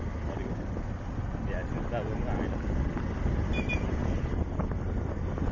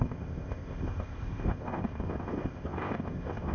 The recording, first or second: first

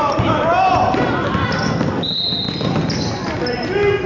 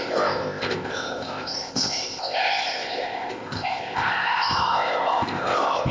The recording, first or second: first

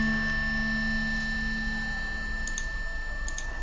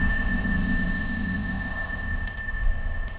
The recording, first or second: first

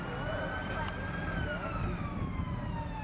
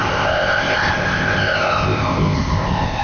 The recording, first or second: first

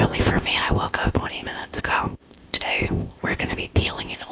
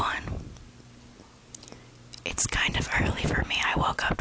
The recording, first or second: second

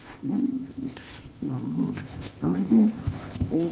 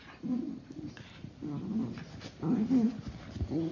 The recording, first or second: second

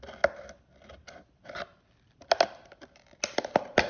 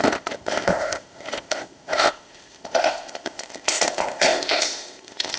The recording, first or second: first